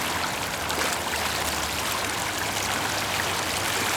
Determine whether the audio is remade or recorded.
recorded